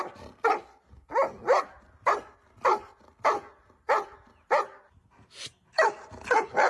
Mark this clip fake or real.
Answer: real